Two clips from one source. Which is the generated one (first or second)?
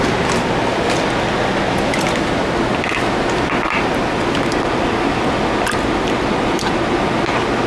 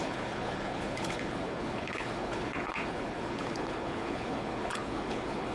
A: second